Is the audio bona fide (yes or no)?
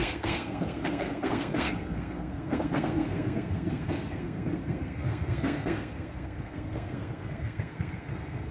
no